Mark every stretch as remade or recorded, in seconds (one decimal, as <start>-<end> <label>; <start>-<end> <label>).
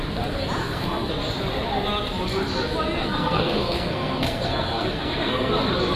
0.0-0.6 recorded; 0.6-1.1 remade; 1.1-3.0 recorded; 3.0-5.5 remade; 5.5-6.0 recorded